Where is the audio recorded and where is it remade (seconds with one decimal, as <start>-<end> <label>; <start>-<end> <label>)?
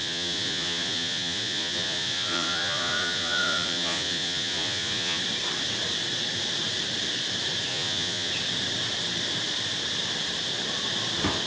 0.0-5.2 remade; 5.2-7.7 recorded; 7.7-8.3 remade; 8.3-11.5 recorded